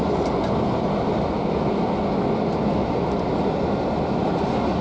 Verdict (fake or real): real